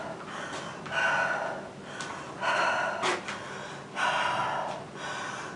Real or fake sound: real